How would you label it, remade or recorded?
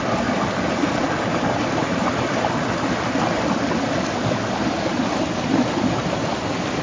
recorded